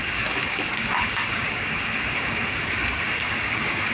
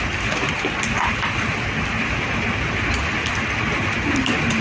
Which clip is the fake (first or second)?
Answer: first